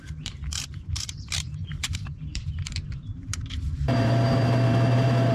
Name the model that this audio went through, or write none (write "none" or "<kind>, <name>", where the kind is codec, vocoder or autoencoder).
vocoder, BigVGAN v2